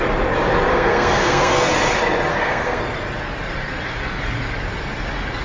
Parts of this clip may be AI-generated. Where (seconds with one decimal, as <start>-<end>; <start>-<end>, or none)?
0.7-1.7; 2.3-2.8